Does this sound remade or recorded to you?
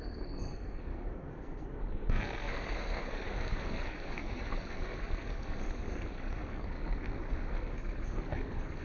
remade